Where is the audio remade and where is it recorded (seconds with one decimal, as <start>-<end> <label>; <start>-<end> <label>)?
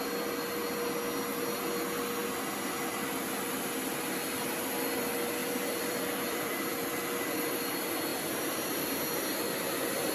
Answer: 0.0-5.4 recorded; 5.4-7.0 remade; 7.0-8.1 recorded; 8.1-8.8 remade; 8.8-10.1 recorded